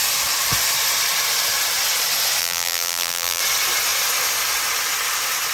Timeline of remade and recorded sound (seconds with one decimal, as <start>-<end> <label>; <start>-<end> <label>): 0.0-2.4 recorded; 2.4-3.4 remade; 3.4-5.5 recorded